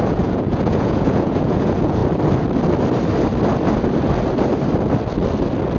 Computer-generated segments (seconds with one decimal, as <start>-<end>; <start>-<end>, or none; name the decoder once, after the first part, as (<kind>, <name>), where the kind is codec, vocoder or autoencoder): 0.0-2.0 (vocoder, Vocos)